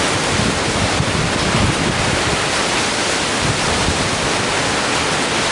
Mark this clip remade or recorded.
recorded